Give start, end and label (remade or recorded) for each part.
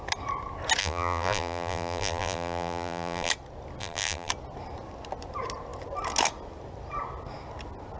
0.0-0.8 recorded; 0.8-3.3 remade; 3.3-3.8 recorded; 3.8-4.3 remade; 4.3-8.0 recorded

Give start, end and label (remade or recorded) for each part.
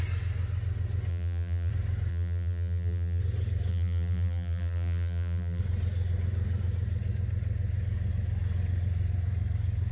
0.0-1.1 recorded; 1.1-1.7 remade; 1.7-2.1 recorded; 2.1-3.2 remade; 3.2-3.7 recorded; 3.7-5.6 remade; 5.6-9.9 recorded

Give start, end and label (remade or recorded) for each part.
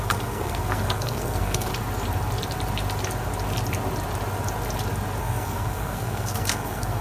0.0-1.7 remade; 1.7-5.2 recorded; 5.2-7.0 remade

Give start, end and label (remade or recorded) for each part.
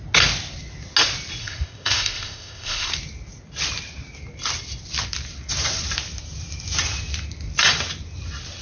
0.0-1.4 recorded; 1.4-2.9 remade; 2.9-8.6 recorded